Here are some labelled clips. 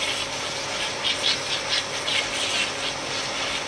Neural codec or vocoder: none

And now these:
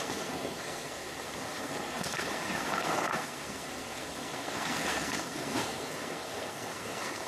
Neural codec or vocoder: codec, SNAC